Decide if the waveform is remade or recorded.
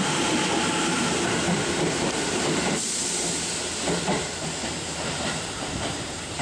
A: remade